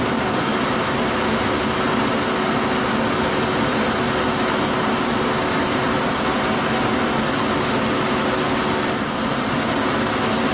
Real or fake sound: real